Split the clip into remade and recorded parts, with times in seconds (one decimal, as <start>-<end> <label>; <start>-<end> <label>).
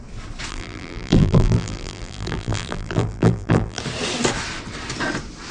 0.0-0.5 recorded; 0.5-3.8 remade; 3.8-5.5 recorded